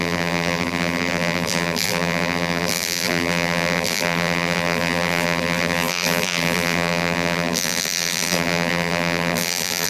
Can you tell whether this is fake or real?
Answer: fake